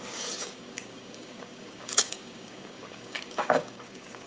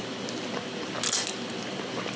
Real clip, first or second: second